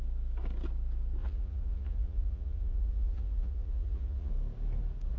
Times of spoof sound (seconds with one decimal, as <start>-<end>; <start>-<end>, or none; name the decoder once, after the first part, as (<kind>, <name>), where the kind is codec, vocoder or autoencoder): 1.2-4.3 (vocoder, Vocos)